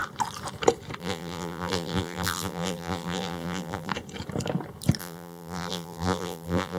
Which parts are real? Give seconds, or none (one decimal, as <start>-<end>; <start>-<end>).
0.0-1.0; 3.9-5.0